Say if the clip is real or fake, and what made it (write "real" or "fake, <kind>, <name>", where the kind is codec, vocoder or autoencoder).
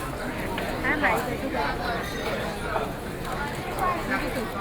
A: real